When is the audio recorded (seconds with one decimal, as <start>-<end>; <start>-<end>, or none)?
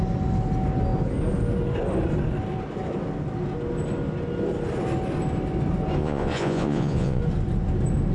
0.0-6.0; 7.2-8.1